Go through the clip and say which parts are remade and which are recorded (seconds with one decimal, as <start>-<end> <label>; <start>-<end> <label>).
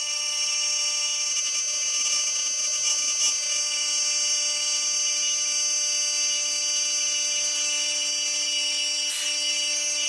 0.0-1.3 recorded; 1.3-3.6 remade; 3.6-10.1 recorded